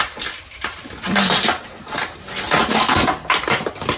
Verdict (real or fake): real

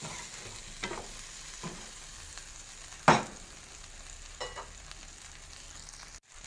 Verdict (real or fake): real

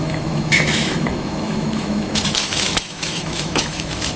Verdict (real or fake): fake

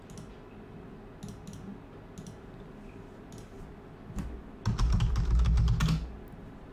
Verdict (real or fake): real